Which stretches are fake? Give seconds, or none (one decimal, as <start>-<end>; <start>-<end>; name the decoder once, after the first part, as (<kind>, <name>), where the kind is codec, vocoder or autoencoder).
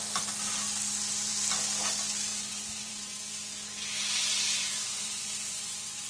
2.3-3.3 (vocoder, Vocos); 4.5-6.1